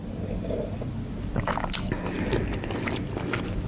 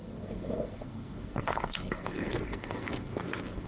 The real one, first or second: first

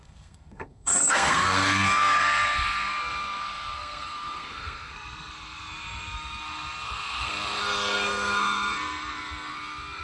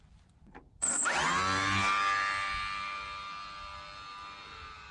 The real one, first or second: second